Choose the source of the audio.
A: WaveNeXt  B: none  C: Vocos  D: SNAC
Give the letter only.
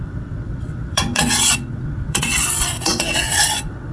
A